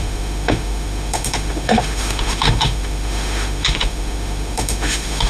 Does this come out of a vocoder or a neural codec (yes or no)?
yes